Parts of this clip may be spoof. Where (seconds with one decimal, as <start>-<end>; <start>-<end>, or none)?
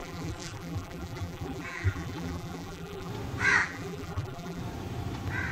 0.0-3.1; 3.6-4.6